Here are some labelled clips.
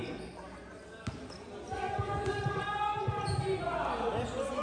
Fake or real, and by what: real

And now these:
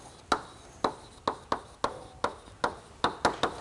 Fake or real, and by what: real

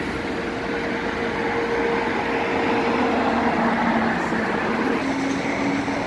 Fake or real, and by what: real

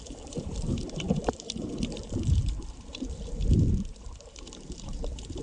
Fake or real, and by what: fake, vocoder, BigVGAN v2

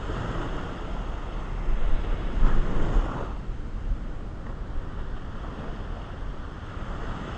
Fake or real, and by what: real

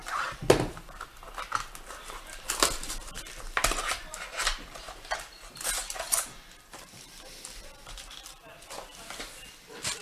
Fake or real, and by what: fake, vocoder, BigVGAN v2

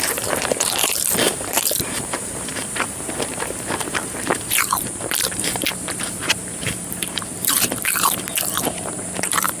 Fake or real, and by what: fake, vocoder, BigVGAN v2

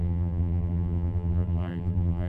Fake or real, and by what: fake, vocoder, BigVGAN v2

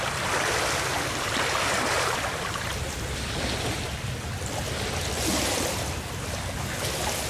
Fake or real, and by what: real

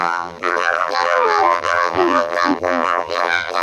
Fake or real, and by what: fake, vocoder, BigVGAN v2